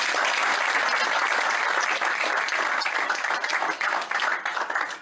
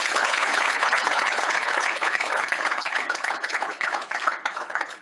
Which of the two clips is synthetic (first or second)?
second